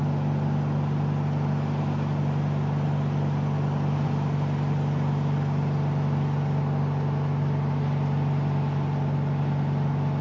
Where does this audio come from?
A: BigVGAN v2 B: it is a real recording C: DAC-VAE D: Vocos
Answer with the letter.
B